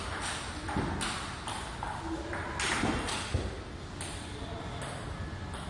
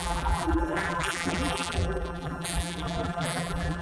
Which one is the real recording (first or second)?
first